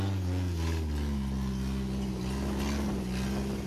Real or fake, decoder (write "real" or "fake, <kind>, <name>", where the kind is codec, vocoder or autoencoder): real